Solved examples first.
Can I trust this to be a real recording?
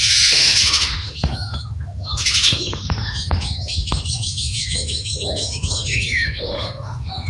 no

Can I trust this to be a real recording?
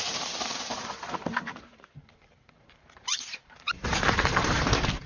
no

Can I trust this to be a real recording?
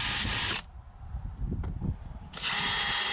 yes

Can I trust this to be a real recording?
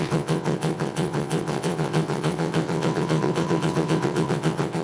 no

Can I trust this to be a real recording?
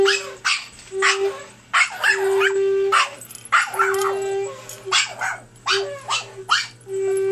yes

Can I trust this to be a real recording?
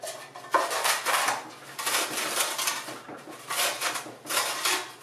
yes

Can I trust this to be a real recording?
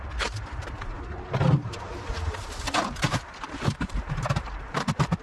no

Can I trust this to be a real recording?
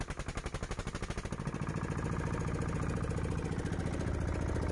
yes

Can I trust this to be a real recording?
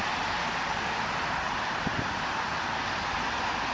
yes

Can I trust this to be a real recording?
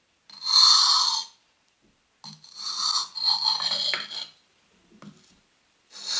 yes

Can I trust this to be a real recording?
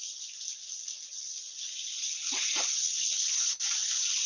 yes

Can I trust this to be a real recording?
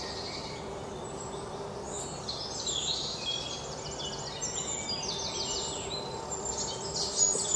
yes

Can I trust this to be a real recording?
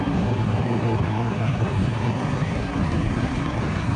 no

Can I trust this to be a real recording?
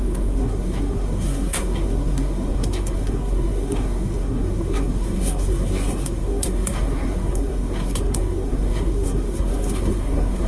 no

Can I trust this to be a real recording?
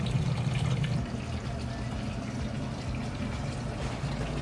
yes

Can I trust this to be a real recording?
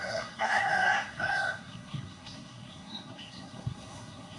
no